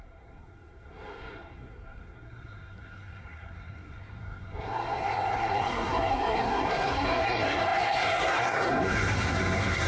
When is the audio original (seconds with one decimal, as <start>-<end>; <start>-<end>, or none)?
none